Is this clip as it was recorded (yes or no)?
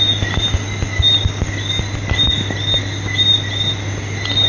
yes